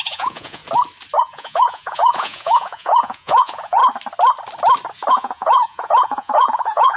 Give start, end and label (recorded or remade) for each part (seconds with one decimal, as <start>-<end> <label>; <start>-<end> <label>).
0.0-0.6 remade; 0.6-1.2 recorded; 1.2-3.8 remade; 3.8-5.1 recorded; 5.1-7.0 remade